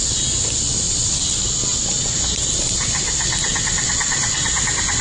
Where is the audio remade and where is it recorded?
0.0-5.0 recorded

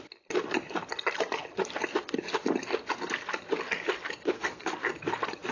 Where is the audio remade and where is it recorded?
0.0-4.3 recorded; 4.3-4.9 remade; 4.9-5.5 recorded

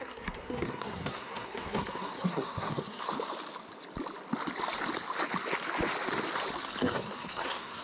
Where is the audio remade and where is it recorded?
0.0-3.1 remade; 3.1-6.8 recorded; 6.8-7.8 remade

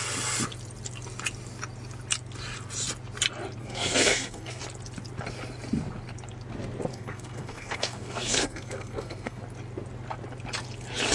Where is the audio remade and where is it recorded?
0.0-3.6 recorded; 3.6-4.6 remade; 4.6-6.9 recorded; 6.9-9.4 remade; 9.4-11.1 recorded